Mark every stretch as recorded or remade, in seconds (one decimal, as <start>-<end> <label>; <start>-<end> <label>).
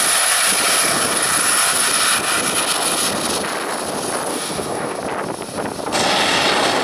0.0-4.3 recorded; 4.3-5.0 remade; 5.0-6.8 recorded